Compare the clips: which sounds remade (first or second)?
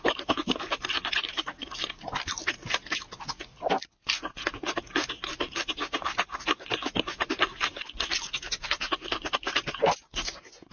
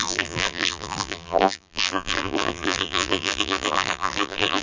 second